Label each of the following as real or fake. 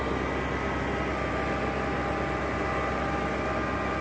real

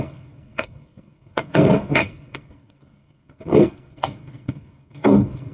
fake